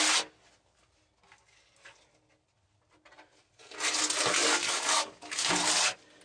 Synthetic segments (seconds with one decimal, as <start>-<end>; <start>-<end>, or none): 4.4-5.5